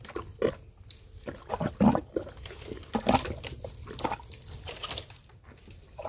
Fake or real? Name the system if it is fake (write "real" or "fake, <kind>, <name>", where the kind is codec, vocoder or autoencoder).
real